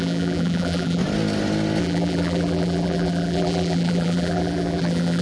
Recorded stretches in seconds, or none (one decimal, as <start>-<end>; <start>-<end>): 1.0-1.8